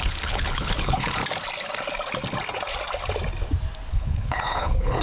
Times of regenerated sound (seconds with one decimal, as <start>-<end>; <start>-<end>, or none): 0.0-1.2; 3.9-5.0